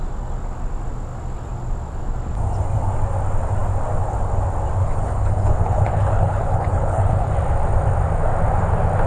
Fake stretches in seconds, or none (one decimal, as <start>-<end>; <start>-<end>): 4.8-7.3